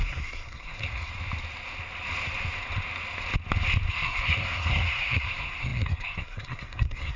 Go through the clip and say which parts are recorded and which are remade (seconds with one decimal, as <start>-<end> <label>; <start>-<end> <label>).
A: 0.0-1.1 remade; 1.1-3.9 recorded; 3.9-7.2 remade